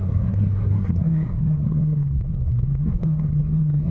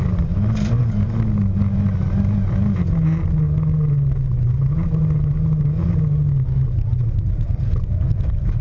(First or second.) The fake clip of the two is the first